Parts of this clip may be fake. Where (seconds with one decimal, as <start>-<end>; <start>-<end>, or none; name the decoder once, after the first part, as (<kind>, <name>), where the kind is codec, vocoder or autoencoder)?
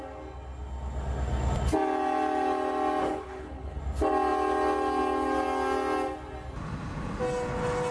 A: 3.0-3.8 (codec, HILCodec)